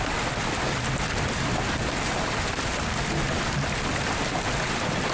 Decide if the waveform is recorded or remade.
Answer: recorded